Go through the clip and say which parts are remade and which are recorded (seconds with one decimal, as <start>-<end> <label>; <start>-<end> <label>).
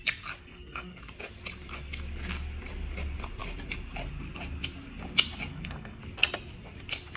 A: 0.0-0.4 recorded; 0.4-1.0 remade; 1.0-5.5 recorded; 5.5-6.0 remade; 6.0-7.2 recorded